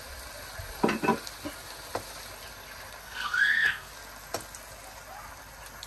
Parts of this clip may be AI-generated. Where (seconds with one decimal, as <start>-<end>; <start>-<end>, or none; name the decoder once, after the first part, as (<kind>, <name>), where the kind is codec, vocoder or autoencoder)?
3.0-3.9 (codec, SNAC)